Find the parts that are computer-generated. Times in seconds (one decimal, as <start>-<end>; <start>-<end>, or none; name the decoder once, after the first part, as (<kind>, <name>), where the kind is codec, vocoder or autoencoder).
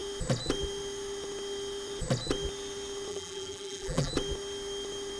3.1-4.1 (vocoder, BigVGAN v2)